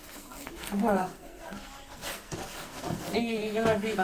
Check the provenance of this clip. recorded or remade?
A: remade